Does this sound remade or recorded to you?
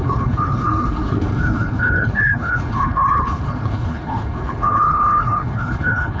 remade